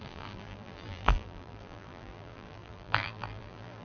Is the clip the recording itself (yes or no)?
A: no